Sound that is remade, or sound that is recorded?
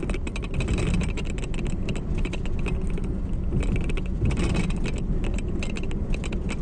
recorded